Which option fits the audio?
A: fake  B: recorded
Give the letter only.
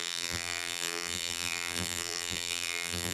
A